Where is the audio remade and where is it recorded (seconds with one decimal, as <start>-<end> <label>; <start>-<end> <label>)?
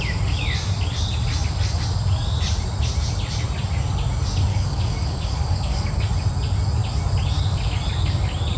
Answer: 0.0-4.5 recorded; 4.5-6.0 remade; 6.0-8.6 recorded